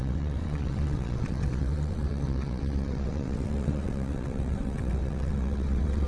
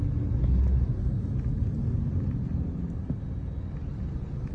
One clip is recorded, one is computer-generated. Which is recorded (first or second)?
second